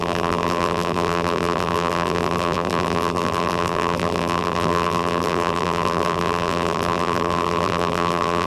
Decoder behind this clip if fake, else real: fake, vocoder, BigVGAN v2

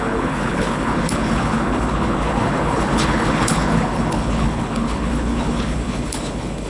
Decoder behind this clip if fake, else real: fake, codec, HILCodec